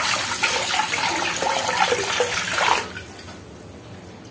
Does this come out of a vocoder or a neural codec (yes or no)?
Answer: no